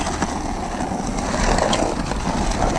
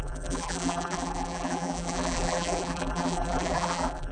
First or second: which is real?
first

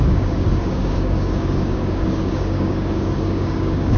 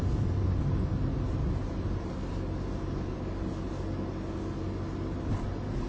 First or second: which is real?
second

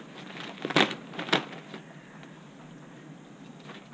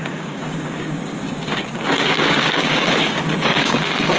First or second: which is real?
first